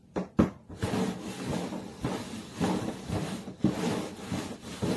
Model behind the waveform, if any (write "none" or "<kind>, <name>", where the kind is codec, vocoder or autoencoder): none